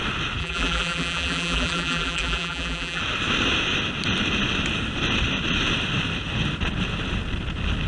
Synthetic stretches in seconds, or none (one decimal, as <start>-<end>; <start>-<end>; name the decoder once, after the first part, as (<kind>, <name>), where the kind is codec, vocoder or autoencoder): 0.4-3.0 (vocoder, BigVGAN v2)